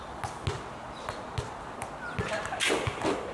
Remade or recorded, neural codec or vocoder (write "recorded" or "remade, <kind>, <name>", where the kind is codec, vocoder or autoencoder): recorded